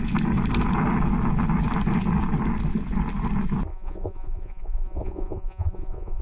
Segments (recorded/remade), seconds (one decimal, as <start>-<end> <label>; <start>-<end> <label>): 0.0-3.7 recorded; 3.7-6.2 remade